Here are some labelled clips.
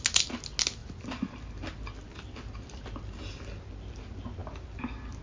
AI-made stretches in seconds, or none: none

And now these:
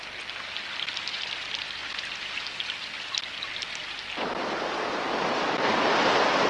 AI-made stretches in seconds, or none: none

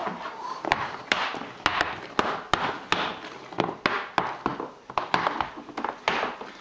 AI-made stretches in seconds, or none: 0.0-1.2

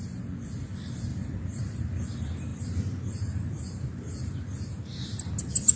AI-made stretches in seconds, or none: 1.1-1.6; 2.5-4.3

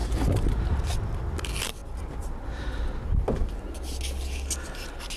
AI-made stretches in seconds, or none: none

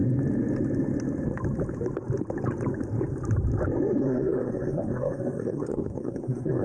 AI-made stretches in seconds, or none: 4.0-6.6